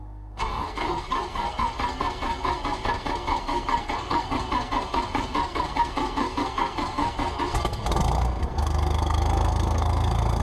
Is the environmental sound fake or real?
fake